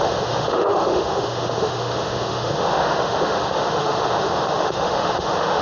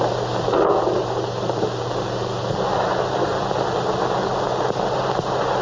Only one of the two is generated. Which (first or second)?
first